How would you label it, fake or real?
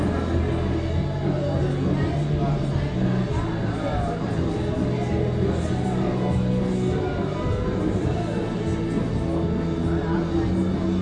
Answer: real